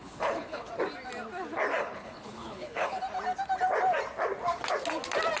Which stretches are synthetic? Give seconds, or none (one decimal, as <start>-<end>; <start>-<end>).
0.0-0.7; 1.8-3.0